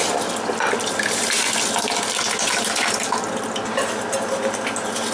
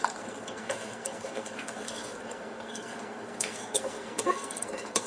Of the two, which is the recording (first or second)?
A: first